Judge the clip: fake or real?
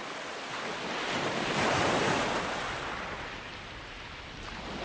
real